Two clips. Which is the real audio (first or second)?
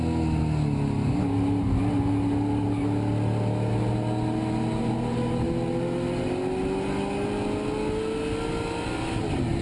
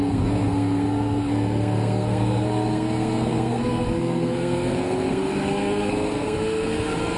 first